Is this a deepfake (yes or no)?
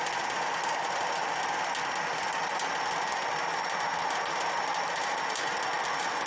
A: no